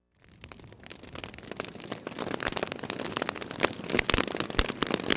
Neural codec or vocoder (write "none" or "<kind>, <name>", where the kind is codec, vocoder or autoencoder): none